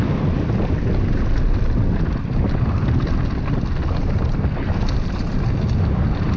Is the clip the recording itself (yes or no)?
yes